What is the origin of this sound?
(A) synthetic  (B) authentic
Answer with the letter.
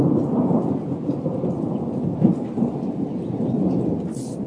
B